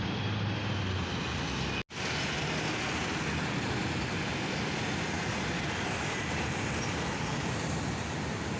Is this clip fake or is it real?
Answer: real